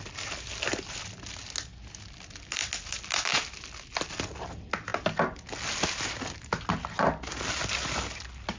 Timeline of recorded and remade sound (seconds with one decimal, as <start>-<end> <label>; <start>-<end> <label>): 0.0-8.6 recorded